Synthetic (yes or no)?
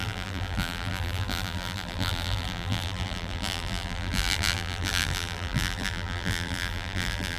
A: yes